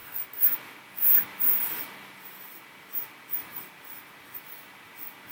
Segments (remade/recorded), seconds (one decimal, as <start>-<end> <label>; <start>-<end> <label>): 0.0-5.3 recorded